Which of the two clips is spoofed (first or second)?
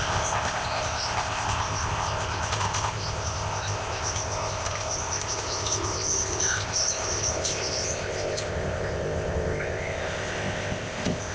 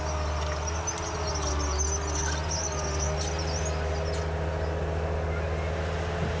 first